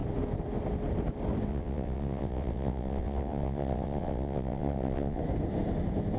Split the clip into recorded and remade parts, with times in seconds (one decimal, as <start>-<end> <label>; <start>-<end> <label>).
0.0-1.5 recorded; 1.5-5.2 remade; 5.2-6.2 recorded